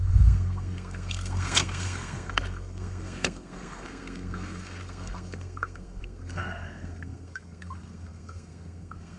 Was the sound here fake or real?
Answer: fake